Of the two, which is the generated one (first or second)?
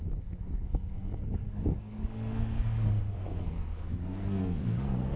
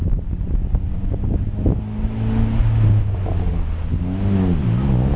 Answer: first